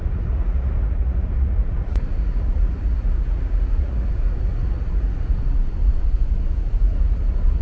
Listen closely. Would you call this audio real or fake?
fake